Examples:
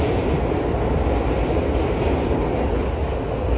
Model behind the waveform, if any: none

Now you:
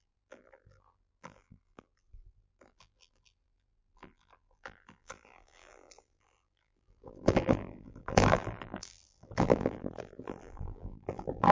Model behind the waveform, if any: vocoder, BigVGAN v2